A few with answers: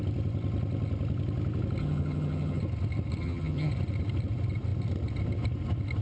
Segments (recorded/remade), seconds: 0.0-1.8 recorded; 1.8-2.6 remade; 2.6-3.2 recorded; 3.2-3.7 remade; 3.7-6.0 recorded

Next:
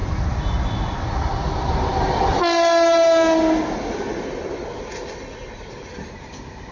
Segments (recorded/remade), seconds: 0.0-6.7 recorded

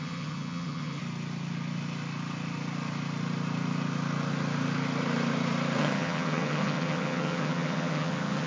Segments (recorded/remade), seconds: 0.0-1.0 remade; 1.0-5.8 recorded; 5.8-8.5 remade

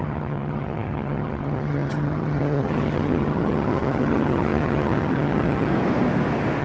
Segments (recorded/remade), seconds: 0.0-5.7 remade; 5.7-6.6 recorded